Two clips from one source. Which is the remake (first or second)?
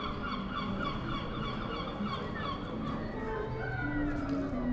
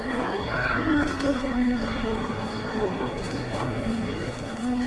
second